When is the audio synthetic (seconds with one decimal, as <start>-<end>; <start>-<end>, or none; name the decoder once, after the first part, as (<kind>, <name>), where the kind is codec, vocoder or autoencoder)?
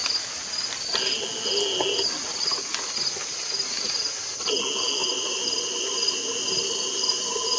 5.0-7.6 (vocoder, BigVGAN v2)